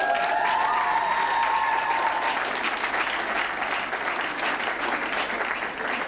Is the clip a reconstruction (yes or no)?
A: no